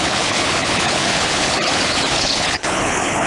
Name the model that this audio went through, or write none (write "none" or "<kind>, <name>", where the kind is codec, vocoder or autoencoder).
codec, HILCodec